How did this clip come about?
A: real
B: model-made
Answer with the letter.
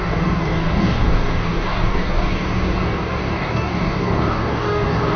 B